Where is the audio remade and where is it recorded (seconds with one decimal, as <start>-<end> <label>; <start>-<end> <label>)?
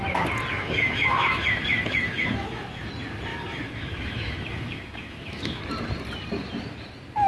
0.0-0.5 recorded; 0.5-2.9 remade; 2.9-3.3 recorded; 3.3-5.6 remade; 5.6-7.3 recorded